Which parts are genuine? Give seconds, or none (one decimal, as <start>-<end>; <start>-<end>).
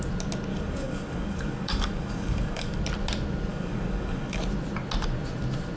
0.0-0.5; 2.8-3.5; 4.4-5.8